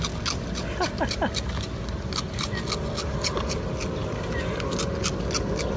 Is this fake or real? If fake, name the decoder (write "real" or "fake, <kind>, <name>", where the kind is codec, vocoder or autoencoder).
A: real